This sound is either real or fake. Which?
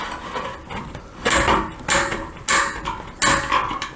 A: real